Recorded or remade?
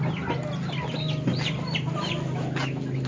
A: recorded